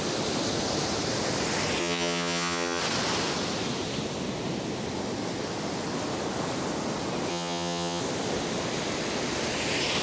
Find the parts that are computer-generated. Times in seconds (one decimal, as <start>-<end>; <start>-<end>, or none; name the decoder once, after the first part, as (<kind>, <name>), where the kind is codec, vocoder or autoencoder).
1.8-2.8 (vocoder, HiFi-GAN); 7.3-8.0